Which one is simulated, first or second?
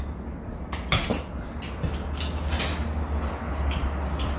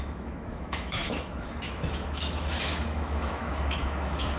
second